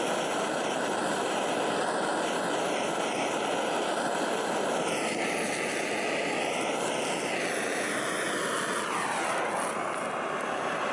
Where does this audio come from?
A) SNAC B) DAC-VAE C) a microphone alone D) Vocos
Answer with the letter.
C